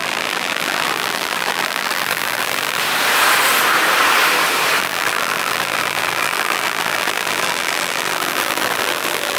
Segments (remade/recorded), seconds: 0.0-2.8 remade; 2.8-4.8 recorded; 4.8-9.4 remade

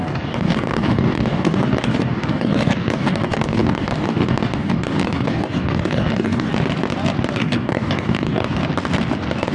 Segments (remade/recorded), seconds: 0.0-6.5 remade; 6.5-7.3 recorded; 7.3-8.6 remade; 8.6-9.5 recorded

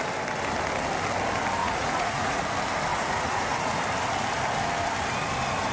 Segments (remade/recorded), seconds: 0.0-1.6 recorded; 1.6-2.4 remade; 2.4-2.9 recorded; 2.9-3.8 remade; 3.8-5.7 recorded